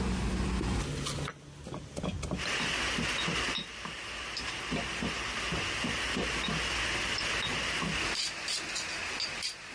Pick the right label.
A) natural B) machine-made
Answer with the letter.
A